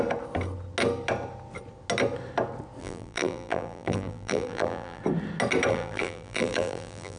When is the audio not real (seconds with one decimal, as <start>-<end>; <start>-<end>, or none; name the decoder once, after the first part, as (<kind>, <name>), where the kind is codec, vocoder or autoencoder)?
2.8-5.0 (vocoder, BigVGAN v2); 5.7-7.2